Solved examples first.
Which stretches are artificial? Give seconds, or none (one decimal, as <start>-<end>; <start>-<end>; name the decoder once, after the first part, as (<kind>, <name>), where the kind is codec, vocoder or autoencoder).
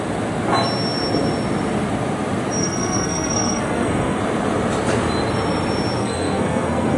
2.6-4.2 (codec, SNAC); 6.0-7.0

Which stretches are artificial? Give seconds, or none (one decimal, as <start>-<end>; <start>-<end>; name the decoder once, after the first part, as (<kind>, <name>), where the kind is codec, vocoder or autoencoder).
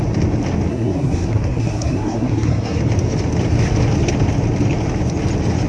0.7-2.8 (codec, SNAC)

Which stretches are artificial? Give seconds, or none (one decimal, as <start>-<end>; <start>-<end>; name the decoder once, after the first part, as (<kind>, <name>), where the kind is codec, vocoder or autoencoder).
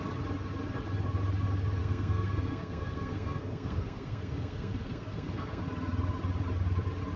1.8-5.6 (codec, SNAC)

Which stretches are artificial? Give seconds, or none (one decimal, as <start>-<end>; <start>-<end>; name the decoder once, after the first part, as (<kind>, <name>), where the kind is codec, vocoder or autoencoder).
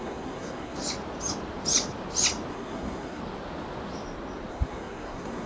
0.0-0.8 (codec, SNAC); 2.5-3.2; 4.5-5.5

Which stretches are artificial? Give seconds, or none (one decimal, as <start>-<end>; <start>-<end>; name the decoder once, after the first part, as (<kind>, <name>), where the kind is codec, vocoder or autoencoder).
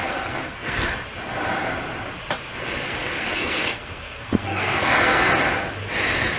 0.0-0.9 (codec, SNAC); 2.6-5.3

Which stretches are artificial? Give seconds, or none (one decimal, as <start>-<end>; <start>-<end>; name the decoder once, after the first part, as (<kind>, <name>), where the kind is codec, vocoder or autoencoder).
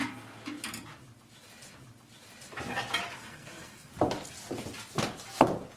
3.2-3.9 (codec, SNAC)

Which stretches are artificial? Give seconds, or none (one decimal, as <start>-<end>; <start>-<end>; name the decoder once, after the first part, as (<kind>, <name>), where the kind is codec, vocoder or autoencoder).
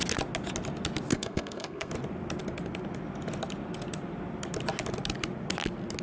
1.1-1.9 (codec, SNAC)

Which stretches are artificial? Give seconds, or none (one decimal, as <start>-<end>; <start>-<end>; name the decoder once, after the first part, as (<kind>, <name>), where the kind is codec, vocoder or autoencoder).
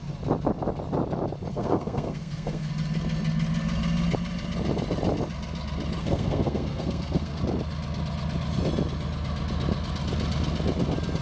1.5-2.7 (codec, SNAC); 6.0-7.4